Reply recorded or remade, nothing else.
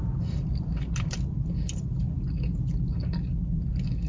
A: recorded